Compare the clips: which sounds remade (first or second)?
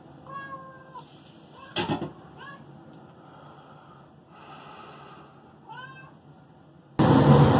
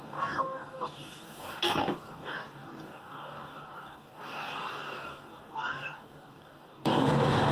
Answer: second